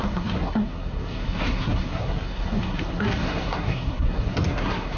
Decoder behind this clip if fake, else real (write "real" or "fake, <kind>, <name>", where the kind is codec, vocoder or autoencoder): fake, codec, SNAC